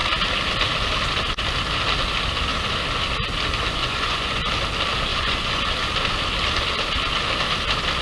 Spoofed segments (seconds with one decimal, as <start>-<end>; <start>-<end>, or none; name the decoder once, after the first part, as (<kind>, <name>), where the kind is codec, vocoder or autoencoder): 3.8-4.5 (vocoder, Vocos); 5.1-5.6